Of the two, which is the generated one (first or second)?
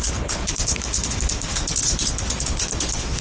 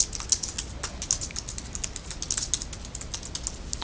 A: first